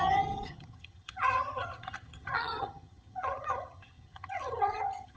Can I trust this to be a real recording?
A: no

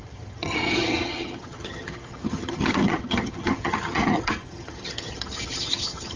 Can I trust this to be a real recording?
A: no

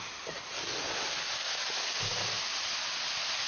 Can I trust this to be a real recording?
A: yes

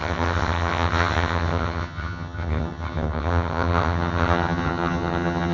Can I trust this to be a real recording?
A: no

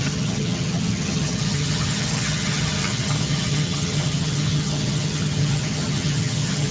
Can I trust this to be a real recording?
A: no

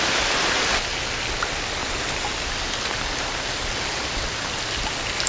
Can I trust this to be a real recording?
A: yes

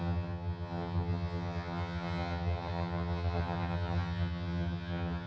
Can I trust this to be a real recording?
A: no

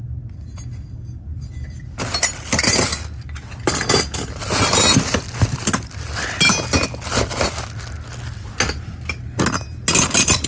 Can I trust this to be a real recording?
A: yes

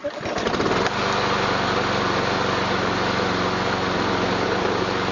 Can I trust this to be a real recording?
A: yes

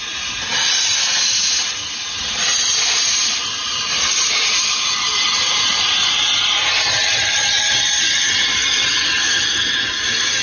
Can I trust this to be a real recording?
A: yes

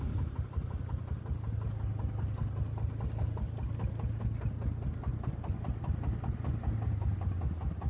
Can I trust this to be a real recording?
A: yes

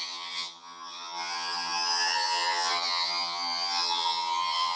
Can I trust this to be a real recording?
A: no